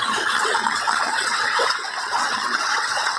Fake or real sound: fake